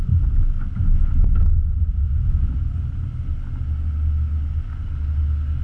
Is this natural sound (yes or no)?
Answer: yes